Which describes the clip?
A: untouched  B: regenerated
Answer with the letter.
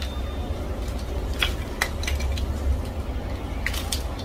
A